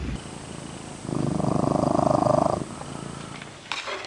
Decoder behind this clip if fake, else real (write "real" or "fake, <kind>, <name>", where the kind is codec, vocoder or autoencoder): real